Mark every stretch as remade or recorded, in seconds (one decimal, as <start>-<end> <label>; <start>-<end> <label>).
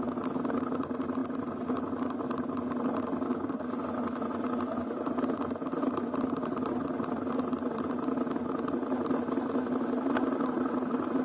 0.0-11.2 recorded